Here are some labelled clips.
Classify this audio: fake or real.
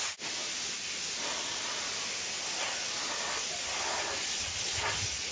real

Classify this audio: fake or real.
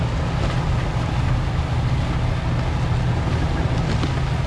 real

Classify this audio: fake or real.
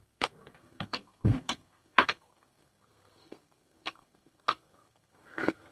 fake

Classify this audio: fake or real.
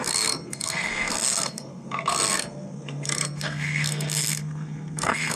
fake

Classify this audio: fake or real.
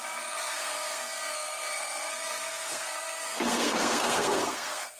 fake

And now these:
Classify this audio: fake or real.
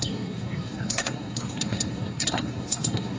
fake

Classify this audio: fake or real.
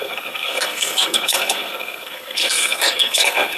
fake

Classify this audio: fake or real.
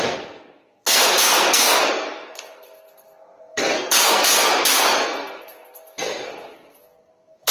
fake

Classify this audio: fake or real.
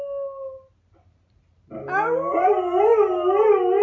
real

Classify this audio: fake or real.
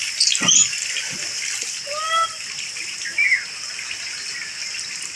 real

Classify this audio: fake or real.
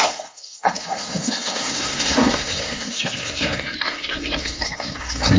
fake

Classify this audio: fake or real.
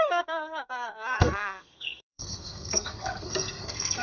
fake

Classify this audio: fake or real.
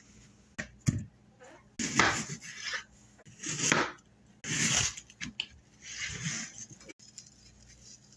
real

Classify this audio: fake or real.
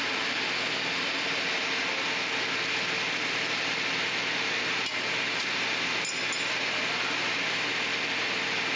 real